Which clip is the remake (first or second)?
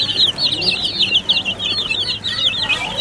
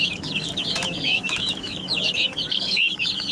second